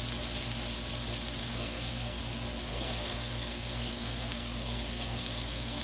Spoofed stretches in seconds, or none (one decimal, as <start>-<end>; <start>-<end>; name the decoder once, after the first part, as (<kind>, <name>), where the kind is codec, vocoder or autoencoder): 1.4-2.2 (codec, SNAC); 2.7-5.8